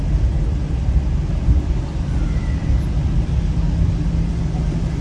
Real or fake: real